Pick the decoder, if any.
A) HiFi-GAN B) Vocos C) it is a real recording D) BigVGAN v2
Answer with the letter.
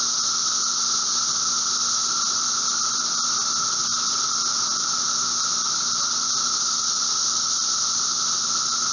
C